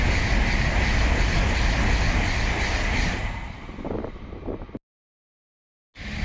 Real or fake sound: real